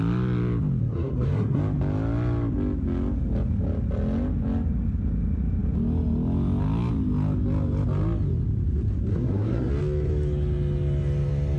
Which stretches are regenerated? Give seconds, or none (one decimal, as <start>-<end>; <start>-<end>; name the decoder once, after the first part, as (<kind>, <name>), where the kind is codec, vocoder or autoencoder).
0.8-1.6 (codec, SNAC); 9.1-9.7